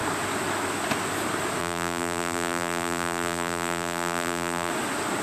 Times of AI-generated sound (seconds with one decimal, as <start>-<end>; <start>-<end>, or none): 1.6-4.7